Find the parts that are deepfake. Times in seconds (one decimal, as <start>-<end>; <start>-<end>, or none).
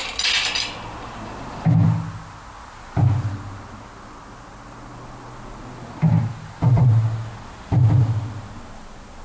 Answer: none